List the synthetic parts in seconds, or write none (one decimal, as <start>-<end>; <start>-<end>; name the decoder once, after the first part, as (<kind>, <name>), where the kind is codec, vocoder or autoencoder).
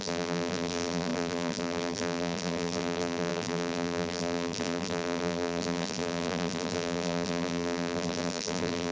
0.0-8.9 (vocoder, BigVGAN v2)